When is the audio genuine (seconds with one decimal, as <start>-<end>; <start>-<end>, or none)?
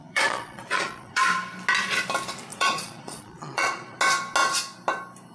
1.2-2.5; 4.0-5.3